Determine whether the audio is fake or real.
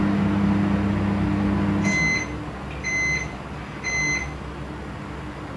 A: real